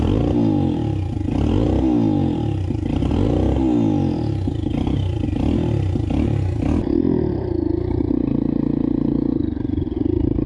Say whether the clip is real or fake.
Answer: real